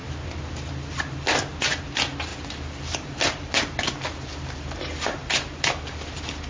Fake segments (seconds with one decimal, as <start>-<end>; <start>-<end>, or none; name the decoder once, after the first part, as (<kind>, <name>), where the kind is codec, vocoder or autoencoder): 2.3-3.7 (vocoder, BigVGAN v2); 5.2-5.7